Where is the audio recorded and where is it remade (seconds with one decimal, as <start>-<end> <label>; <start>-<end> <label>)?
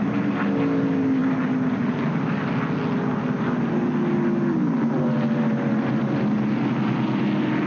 0.0-7.7 recorded